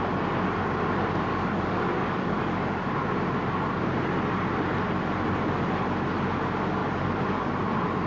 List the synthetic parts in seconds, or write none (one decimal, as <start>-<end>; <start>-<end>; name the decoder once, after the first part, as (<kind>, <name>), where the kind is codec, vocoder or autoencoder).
1.3-2.8 (codec, DAC); 6.8-7.5